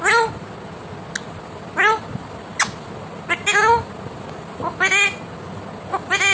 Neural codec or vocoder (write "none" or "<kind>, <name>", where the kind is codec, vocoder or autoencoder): none